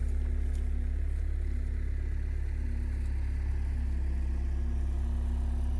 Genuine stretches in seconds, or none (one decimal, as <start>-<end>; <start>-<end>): 0.0-5.8